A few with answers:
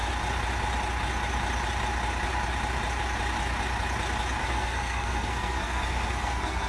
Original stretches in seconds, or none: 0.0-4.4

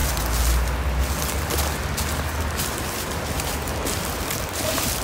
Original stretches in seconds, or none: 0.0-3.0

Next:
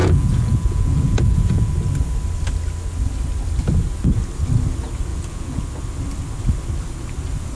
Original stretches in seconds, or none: 1.7-5.1; 5.6-7.5